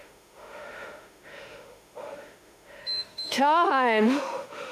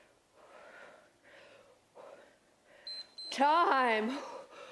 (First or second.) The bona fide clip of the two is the second